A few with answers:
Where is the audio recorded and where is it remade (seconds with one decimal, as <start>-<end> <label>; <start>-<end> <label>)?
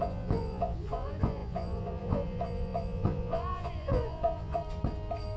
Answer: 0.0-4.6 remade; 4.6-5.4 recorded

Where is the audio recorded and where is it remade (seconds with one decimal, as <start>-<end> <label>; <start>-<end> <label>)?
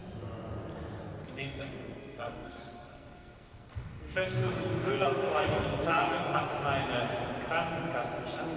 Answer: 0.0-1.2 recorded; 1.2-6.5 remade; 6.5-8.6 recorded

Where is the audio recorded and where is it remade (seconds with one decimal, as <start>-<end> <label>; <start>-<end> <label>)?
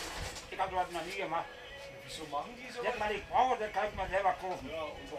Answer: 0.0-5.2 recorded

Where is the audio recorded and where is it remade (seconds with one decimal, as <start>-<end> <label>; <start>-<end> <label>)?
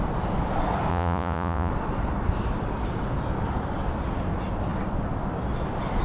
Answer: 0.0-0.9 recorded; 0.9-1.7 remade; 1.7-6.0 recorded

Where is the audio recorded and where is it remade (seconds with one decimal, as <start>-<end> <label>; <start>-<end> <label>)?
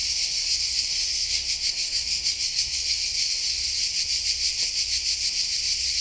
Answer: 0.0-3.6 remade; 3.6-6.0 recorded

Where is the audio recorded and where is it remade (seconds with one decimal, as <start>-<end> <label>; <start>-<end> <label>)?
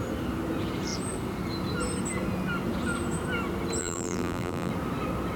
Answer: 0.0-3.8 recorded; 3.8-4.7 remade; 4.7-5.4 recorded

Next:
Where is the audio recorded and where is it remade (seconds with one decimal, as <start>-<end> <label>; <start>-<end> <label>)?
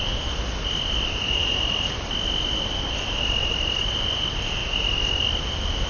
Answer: 0.0-5.9 recorded